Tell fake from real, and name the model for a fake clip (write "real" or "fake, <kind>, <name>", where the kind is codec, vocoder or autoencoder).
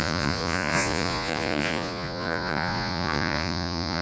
fake, vocoder, Vocos